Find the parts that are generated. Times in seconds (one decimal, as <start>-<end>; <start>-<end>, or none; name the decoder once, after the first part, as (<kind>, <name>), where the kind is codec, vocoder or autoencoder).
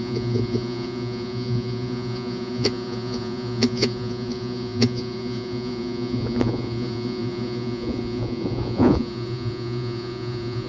0.0-10.7 (vocoder, Vocos)